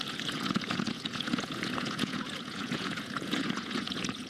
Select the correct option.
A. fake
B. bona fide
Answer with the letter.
A